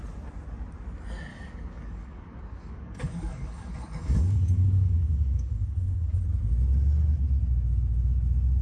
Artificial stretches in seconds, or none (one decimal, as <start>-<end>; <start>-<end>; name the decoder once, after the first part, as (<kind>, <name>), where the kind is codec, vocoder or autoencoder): 1.3-6.2 (codec, DAC)